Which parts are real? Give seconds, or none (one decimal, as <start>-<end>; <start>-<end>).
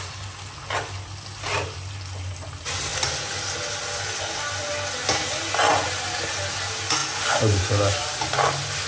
0.0-8.9